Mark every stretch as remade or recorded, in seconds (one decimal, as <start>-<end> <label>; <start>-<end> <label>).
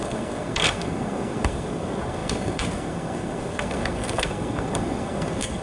0.0-5.6 remade